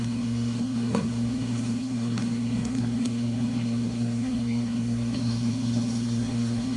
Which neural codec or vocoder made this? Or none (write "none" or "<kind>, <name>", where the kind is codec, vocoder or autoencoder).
codec, SNAC